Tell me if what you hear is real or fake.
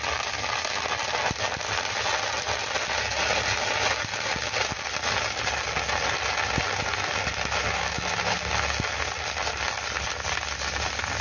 real